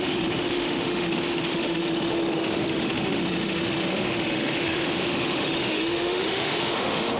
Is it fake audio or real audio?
fake